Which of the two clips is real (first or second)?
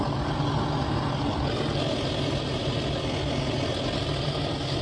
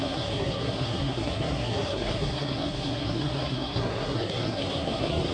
first